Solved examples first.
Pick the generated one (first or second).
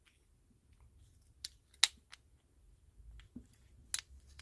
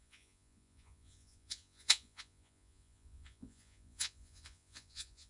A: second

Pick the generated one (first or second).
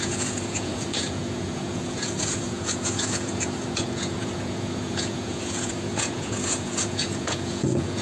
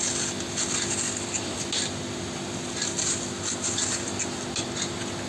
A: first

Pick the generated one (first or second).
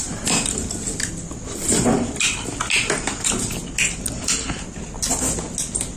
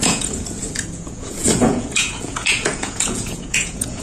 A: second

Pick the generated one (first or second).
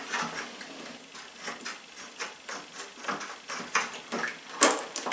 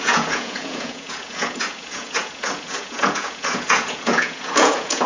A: second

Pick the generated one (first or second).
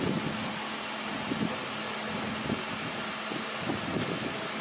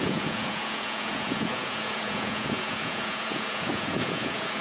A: second